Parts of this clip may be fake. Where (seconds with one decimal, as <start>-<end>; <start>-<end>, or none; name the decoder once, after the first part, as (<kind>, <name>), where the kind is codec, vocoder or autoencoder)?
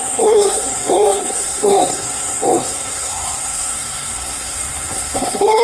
0.0-5.6 (codec, SNAC)